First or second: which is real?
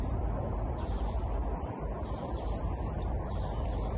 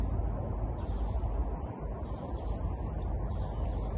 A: second